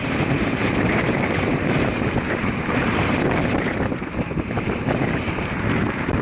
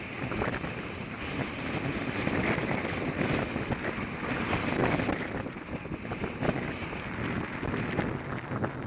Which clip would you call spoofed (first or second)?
first